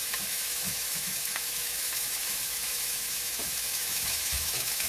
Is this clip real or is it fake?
fake